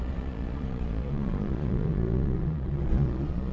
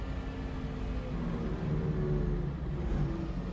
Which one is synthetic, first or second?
first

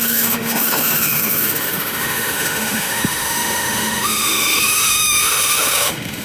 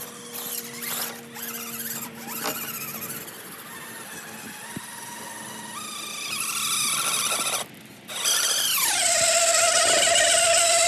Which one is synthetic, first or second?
first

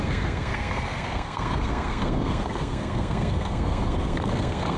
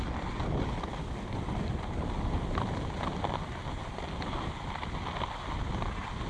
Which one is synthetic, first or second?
first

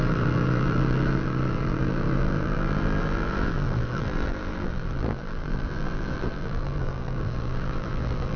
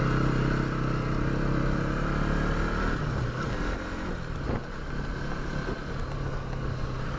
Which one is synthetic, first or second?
first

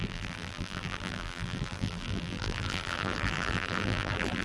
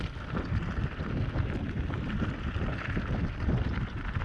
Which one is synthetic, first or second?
first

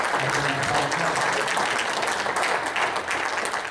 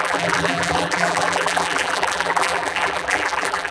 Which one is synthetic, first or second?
second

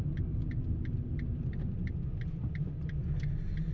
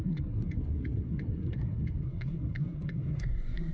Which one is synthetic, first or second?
second